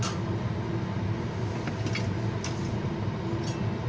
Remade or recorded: recorded